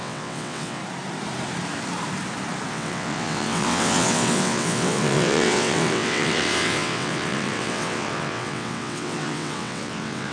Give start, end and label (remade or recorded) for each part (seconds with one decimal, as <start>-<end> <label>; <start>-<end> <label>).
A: 0.0-0.8 remade; 0.8-2.7 recorded; 2.7-10.3 remade

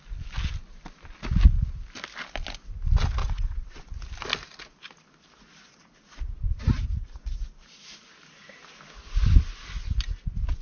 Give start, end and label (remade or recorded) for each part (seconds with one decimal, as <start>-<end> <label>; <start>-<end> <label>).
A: 0.0-3.2 recorded; 3.2-3.8 remade; 3.8-10.6 recorded

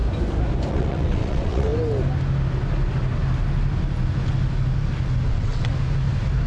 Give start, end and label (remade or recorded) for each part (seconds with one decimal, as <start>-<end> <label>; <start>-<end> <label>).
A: 0.0-0.7 recorded; 0.7-1.7 remade; 1.7-5.3 recorded; 5.3-5.7 remade; 5.7-6.5 recorded

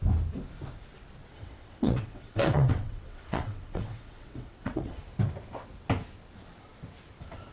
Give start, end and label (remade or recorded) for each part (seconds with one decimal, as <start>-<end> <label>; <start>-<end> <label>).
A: 0.0-1.3 recorded; 1.3-5.0 remade; 5.0-7.5 recorded

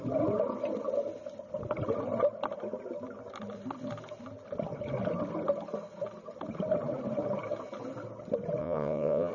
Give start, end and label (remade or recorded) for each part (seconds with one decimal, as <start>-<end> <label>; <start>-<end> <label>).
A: 0.0-8.6 recorded; 8.6-9.3 remade

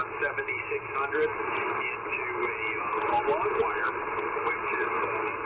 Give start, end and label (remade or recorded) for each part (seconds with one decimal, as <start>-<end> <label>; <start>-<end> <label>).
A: 0.0-5.5 recorded

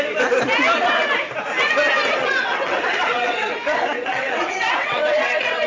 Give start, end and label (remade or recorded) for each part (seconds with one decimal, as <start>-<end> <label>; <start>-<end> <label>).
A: 0.0-2.2 recorded; 2.2-5.7 remade

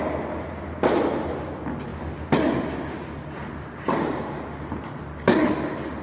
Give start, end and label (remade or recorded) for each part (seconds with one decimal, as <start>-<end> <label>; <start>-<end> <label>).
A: 0.0-6.0 recorded